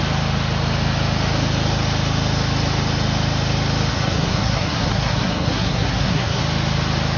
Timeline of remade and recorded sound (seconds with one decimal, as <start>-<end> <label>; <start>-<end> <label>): 0.0-3.9 recorded; 3.9-6.4 remade; 6.4-7.2 recorded